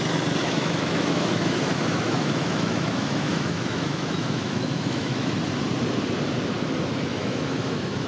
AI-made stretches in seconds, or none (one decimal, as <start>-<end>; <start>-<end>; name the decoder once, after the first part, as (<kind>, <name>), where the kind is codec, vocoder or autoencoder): 0.4-5.3 (autoencoder, DAC-VAE); 7.1-8.1